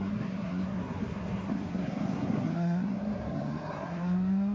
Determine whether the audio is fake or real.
fake